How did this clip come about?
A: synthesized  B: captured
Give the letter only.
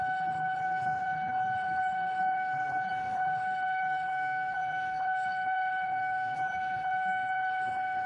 A